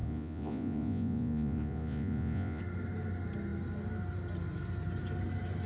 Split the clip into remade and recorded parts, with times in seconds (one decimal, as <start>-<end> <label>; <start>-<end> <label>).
0.0-2.6 remade; 2.6-5.7 recorded